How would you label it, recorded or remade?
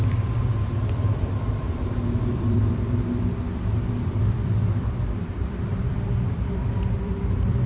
remade